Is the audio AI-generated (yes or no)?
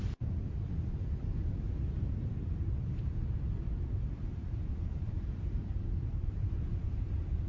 yes